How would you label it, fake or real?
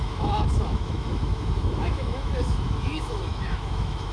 fake